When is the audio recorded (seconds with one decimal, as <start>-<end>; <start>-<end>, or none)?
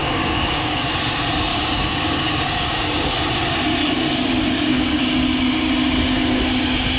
0.9-1.5; 3.2-3.8; 5.0-7.0